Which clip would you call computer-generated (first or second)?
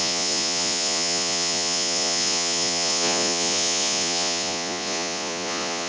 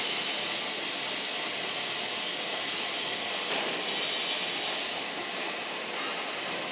first